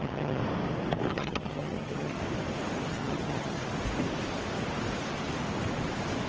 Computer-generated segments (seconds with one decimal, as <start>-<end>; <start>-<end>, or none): 0.0-0.4; 1.1-2.2; 2.9-3.6